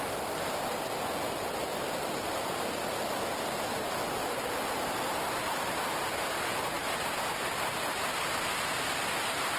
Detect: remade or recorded recorded